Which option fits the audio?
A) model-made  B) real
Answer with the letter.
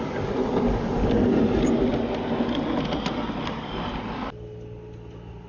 B